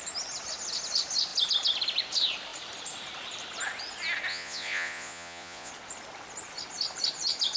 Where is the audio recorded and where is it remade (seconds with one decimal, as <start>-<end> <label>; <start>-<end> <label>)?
0.0-4.3 recorded; 4.3-5.7 remade; 5.7-7.6 recorded

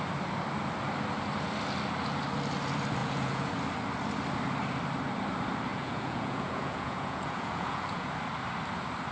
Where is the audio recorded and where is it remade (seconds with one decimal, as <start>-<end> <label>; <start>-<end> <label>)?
0.0-3.0 recorded; 3.0-3.5 remade; 3.5-5.7 recorded; 5.7-8.1 remade; 8.1-9.1 recorded

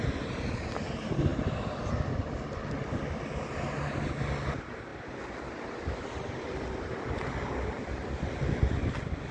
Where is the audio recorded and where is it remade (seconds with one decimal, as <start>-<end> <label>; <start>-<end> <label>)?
0.0-9.3 recorded

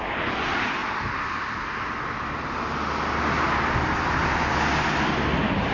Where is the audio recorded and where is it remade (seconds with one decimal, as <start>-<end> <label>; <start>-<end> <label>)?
0.0-5.7 recorded